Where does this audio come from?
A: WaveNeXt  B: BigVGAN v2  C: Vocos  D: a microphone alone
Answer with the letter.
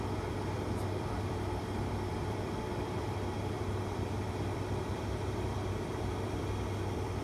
B